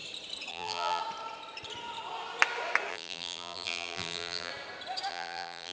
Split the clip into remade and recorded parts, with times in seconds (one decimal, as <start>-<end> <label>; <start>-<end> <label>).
0.0-0.5 recorded; 0.5-1.0 remade; 1.0-2.9 recorded; 2.9-4.5 remade; 4.5-5.1 recorded; 5.1-5.7 remade